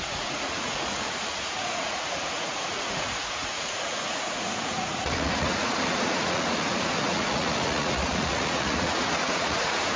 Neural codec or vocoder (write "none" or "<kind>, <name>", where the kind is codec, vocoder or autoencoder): vocoder, Vocos